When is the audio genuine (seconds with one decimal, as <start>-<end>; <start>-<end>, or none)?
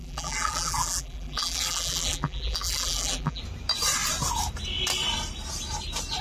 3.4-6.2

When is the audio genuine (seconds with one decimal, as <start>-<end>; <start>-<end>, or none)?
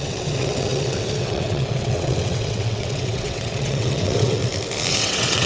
4.4-4.9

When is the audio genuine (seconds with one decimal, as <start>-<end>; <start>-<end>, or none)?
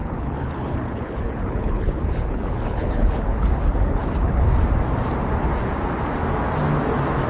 4.4-7.3